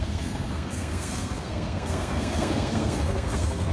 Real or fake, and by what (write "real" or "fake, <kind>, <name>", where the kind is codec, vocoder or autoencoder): fake, codec, SNAC